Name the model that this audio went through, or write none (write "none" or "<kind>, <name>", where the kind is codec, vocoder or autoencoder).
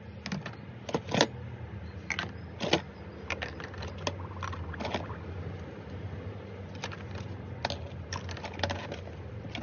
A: none